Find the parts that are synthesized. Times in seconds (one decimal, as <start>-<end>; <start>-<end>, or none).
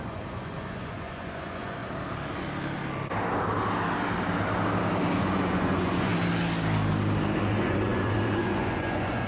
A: 0.0-1.8; 5.2-6.1; 7.4-9.3